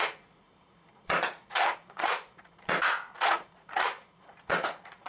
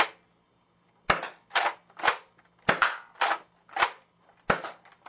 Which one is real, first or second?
second